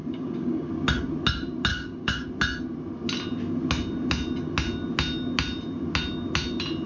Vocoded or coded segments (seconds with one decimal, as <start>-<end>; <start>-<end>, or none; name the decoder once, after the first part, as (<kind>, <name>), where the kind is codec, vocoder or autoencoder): 0.0-0.7 (codec, DAC); 1.7-2.3